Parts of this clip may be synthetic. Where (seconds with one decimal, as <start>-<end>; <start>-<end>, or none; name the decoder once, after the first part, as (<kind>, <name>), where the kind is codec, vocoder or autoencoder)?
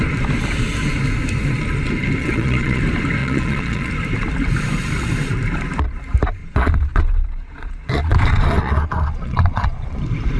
2.2-2.8 (vocoder, Vocos); 3.2-3.9; 6.4-10.0